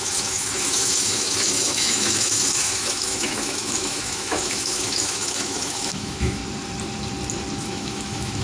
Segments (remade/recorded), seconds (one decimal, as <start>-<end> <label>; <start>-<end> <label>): 0.0-6.4 remade; 6.4-7.6 recorded; 7.6-8.4 remade